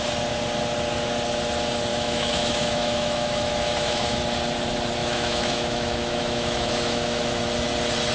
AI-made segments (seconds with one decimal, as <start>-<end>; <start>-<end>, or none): 1.9-4.2; 5.0-7.2